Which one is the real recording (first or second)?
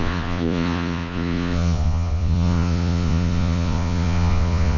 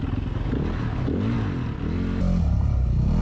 second